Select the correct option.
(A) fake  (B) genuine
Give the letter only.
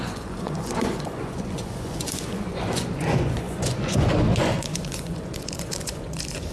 A